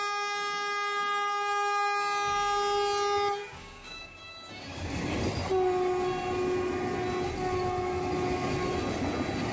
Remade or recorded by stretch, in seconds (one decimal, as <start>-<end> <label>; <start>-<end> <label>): 0.0-3.4 recorded; 3.4-4.9 remade; 4.9-9.5 recorded